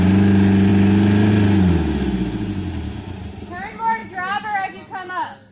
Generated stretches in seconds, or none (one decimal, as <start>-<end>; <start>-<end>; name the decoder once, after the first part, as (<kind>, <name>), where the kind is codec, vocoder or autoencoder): none